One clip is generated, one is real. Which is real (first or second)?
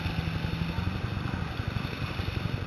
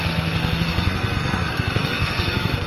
first